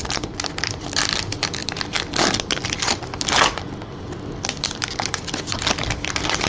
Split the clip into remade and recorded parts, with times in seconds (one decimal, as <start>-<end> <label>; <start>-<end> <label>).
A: 0.0-6.5 recorded